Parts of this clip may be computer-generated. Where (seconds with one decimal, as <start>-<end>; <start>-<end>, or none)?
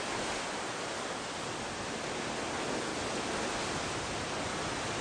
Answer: none